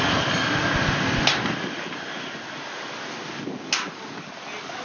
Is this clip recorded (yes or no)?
yes